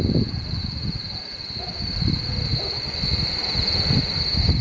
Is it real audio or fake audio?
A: real